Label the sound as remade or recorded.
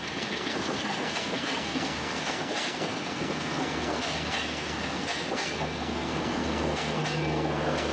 remade